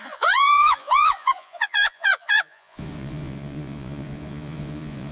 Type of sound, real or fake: fake